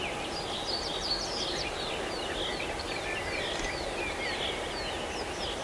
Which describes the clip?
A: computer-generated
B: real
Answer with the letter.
B